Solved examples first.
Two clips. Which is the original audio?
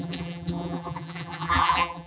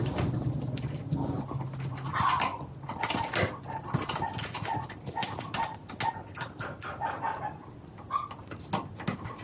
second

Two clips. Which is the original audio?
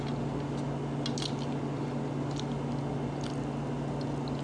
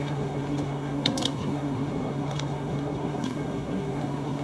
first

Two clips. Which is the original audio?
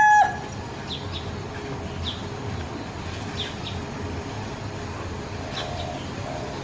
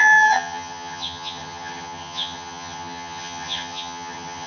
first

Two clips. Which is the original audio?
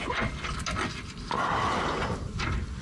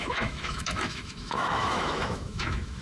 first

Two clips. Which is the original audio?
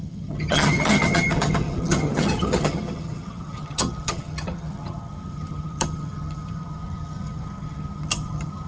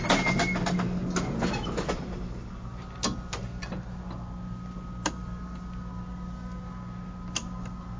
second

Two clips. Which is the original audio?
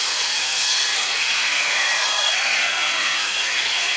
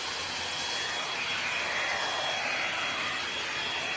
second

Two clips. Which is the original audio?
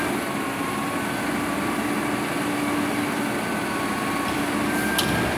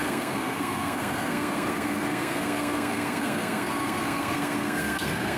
first